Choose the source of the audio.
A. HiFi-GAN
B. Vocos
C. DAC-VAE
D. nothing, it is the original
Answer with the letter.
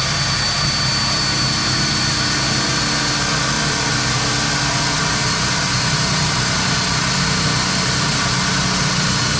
D